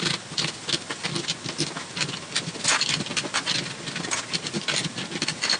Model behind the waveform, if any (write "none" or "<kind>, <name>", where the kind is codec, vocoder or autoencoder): none